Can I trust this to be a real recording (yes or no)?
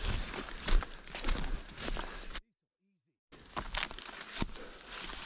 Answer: yes